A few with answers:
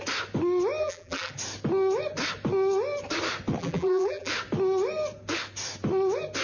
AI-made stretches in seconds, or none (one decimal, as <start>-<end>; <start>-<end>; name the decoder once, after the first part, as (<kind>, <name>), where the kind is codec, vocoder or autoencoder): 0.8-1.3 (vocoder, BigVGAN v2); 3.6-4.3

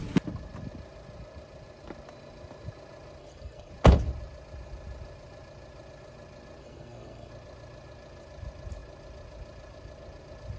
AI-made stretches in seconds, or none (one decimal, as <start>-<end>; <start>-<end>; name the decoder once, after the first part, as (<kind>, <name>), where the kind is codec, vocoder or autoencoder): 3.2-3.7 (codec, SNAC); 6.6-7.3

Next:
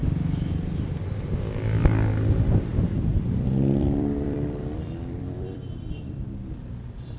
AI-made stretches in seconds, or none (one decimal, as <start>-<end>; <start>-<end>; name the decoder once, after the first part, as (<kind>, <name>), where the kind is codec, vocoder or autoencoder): 0.0-1.1 (vocoder, BigVGAN v2); 2.7-7.2

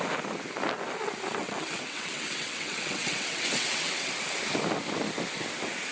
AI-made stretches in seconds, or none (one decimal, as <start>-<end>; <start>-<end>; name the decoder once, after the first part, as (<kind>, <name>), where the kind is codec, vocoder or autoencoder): 1.4-4.1 (vocoder, WaveNeXt)